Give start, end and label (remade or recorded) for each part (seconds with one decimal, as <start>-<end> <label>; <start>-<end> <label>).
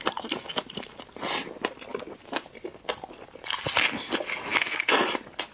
0.0-5.5 recorded